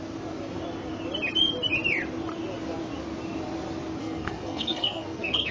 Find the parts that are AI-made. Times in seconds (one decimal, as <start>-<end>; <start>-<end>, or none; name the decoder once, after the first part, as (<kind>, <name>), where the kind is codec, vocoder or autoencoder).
4.0-5.5 (codec, SNAC)